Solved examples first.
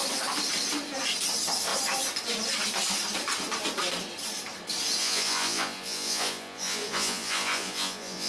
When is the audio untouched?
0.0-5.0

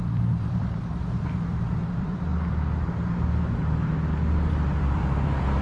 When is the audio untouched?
2.3-4.5

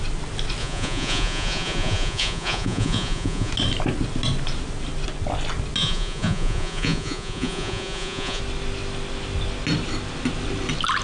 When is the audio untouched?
0.0-0.6; 3.5-5.8; 8.4-11.0

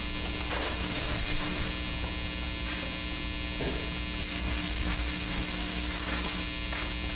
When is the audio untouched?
0.0-0.6; 1.7-4.2; 6.4-7.2

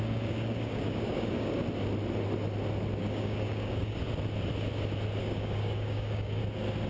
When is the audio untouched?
1.6-3.0; 4.0-5.2; 6.4-6.9

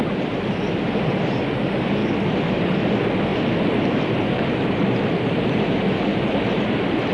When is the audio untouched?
0.0-7.1

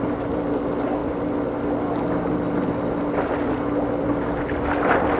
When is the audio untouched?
0.0-5.2